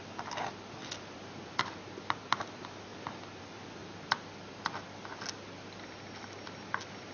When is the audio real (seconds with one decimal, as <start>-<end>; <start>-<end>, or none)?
0.0-7.1